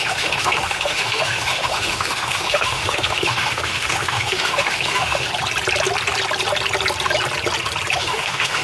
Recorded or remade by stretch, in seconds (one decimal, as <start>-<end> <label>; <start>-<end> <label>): 0.0-5.3 remade; 5.3-8.0 recorded; 8.0-8.6 remade